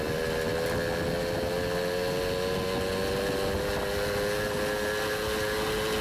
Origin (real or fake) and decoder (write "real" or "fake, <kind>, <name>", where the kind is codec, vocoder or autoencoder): real